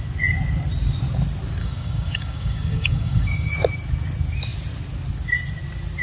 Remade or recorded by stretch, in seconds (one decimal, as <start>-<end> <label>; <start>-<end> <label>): 0.0-1.6 recorded; 1.6-3.5 remade; 3.5-6.0 recorded